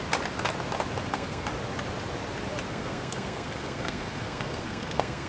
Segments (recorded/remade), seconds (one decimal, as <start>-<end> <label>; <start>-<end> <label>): 0.0-1.1 recorded; 1.1-1.5 remade; 1.5-2.7 recorded; 2.7-5.3 remade